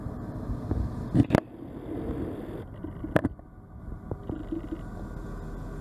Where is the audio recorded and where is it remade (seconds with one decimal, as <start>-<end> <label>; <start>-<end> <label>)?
0.0-5.8 recorded